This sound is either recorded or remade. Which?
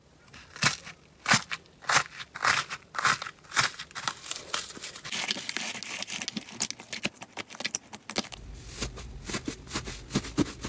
recorded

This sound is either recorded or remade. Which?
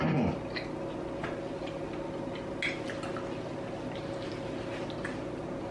recorded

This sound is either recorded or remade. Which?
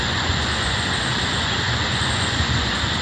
remade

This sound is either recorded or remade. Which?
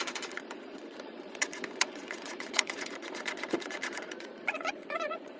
remade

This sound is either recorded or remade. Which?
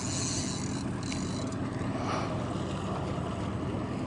recorded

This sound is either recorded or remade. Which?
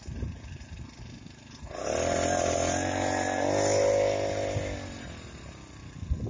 recorded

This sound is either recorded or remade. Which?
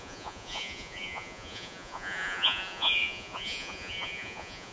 remade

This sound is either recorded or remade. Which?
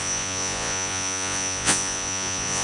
remade